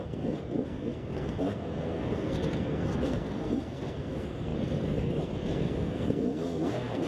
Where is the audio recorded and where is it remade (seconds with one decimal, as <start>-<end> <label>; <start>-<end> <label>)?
0.0-7.1 remade